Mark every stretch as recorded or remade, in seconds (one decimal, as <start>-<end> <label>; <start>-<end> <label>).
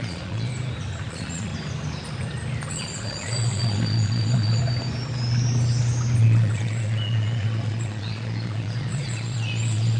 0.0-0.5 remade; 0.5-1.1 recorded; 1.1-1.5 remade; 1.5-2.7 recorded; 2.7-4.6 remade; 4.6-6.2 recorded; 6.2-10.0 remade